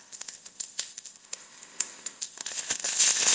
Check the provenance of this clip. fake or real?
fake